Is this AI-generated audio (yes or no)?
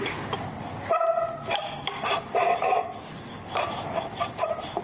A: no